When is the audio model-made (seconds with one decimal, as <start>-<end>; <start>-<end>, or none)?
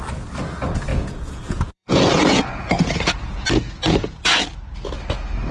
0.9-4.2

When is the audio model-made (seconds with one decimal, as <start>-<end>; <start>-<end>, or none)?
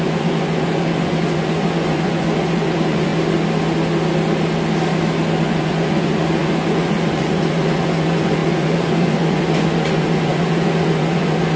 0.0-3.1; 5.4-11.6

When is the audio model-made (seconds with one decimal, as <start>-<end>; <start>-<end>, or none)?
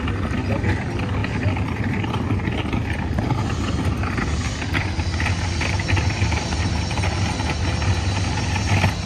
none